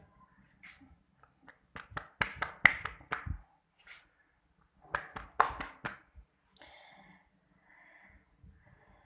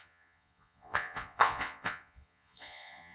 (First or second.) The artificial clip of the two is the second